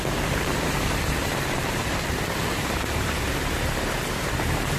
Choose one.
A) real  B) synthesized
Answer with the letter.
B